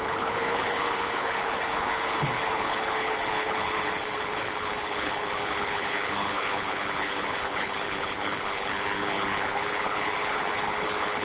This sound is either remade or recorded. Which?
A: remade